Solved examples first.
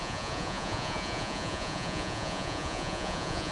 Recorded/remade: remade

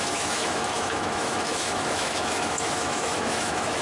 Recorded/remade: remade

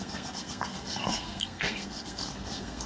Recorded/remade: remade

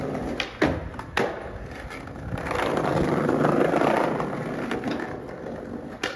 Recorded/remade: recorded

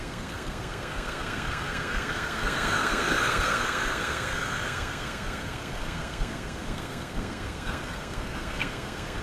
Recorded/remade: remade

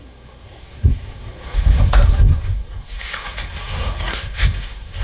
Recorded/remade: remade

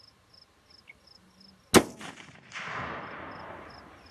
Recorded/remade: recorded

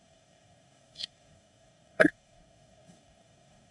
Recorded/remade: remade